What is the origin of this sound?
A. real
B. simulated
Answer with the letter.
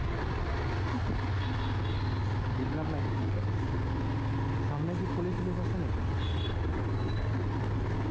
A